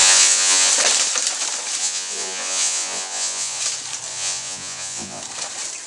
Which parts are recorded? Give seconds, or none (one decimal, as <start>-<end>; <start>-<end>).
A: 0.7-1.8; 3.6-4.1; 5.2-5.9